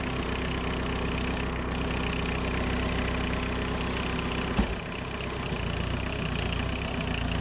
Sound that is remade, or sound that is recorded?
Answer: recorded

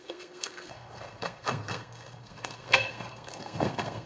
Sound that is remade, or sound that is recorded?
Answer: remade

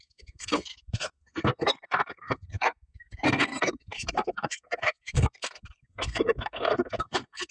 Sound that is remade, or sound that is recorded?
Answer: remade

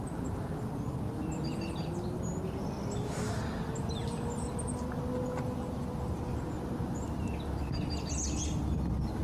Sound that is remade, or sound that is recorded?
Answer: recorded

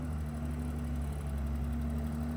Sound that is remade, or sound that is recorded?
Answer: recorded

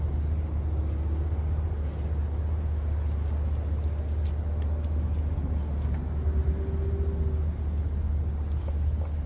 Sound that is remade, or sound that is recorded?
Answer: recorded